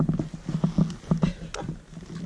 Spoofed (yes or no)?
no